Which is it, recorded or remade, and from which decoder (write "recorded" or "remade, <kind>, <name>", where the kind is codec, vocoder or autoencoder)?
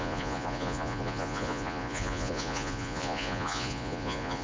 remade, vocoder, Vocos